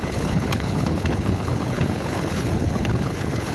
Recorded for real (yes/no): no